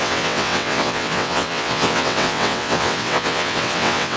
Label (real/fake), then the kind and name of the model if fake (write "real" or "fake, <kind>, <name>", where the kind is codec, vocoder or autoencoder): fake, vocoder, WaveNeXt